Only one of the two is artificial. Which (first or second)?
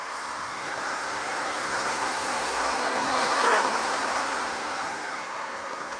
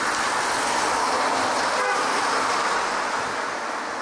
first